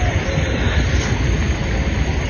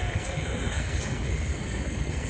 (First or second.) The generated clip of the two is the second